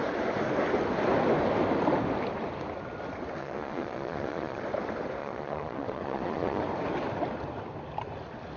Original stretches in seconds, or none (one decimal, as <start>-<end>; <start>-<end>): 0.0-3.4; 4.6-5.2; 6.6-8.6